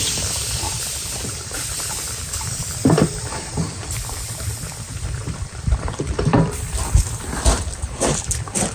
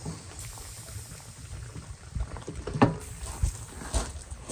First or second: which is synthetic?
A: first